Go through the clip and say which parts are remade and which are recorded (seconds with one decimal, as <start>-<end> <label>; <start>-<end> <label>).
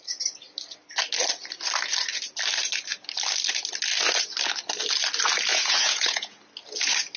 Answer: 0.0-5.5 recorded; 5.5-6.4 remade; 6.4-7.2 recorded